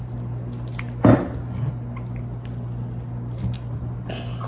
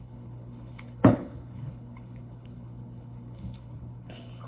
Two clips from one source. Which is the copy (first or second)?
second